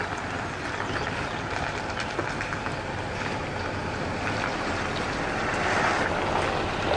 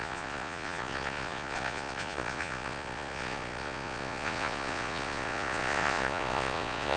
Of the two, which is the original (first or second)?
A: first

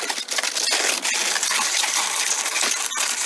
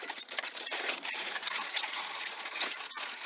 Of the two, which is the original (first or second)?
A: first